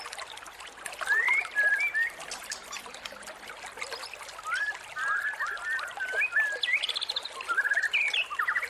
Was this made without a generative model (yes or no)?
yes